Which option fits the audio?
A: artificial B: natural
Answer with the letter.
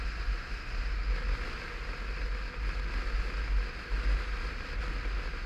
B